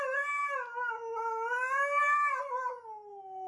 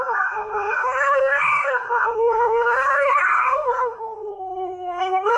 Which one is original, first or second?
first